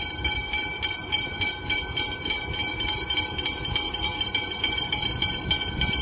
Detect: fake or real fake